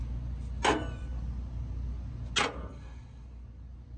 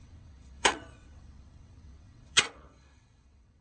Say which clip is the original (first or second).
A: first